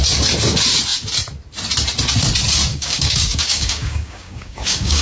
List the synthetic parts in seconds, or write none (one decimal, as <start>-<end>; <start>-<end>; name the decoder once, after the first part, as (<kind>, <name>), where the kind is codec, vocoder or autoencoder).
2.7-5.0 (codec, DAC)